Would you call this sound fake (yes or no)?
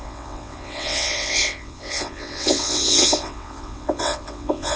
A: yes